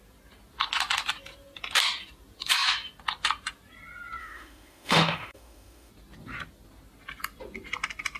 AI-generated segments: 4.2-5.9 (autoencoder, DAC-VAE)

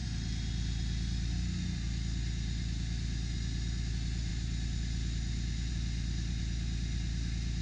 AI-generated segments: none

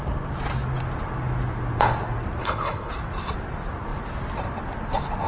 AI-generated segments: 2.4-2.9 (codec, HILCodec)

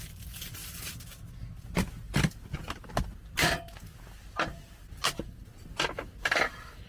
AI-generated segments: none

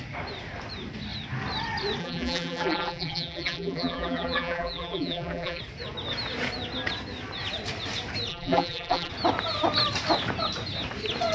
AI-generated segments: 2.0-5.6 (vocoder, BigVGAN v2); 8.3-9.1